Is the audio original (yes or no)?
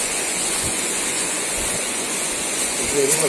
no